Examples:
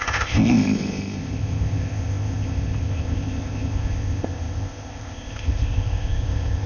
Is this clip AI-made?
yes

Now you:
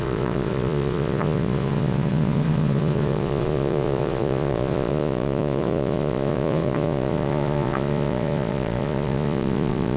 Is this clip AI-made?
yes